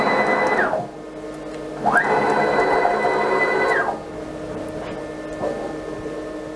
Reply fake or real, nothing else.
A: real